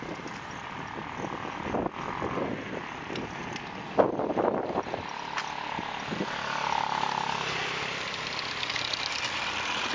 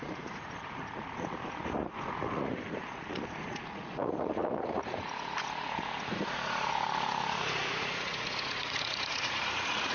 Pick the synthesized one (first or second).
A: second